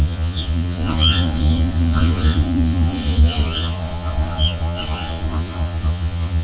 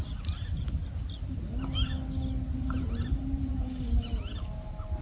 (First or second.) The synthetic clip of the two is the first